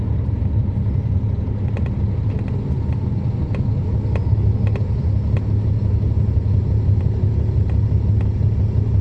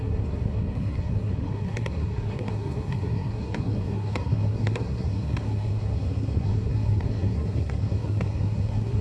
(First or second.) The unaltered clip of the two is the first